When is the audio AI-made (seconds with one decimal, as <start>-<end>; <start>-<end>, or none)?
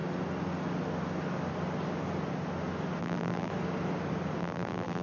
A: 3.0-3.5; 4.4-5.0